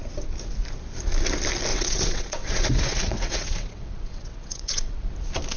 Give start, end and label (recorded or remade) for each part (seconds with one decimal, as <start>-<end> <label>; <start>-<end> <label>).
0.0-1.7 recorded; 1.7-5.1 remade; 5.1-5.6 recorded